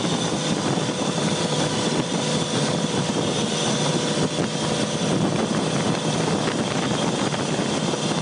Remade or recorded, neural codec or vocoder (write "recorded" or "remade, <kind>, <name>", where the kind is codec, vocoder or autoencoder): recorded